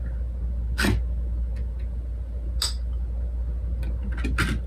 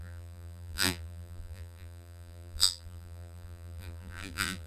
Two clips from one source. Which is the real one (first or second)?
first